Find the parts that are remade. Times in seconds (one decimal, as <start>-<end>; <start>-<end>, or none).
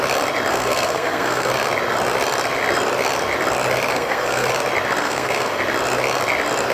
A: 0.5-1.5; 3.9-4.5; 5.0-5.6